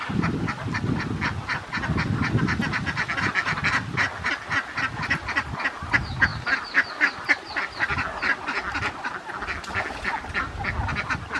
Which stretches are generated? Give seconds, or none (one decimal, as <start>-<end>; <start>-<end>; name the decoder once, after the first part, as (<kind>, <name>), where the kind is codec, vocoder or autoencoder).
none